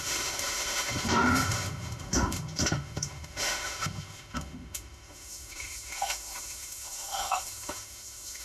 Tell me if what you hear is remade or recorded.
remade